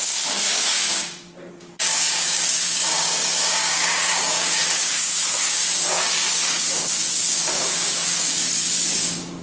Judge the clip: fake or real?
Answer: fake